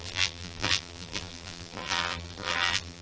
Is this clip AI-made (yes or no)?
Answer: yes